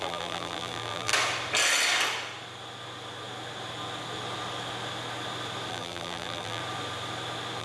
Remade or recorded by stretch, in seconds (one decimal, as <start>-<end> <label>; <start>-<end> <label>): 0.0-1.1 remade; 1.1-5.7 recorded; 5.7-6.6 remade; 6.6-7.6 recorded